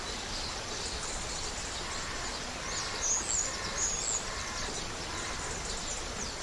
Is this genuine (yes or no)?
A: yes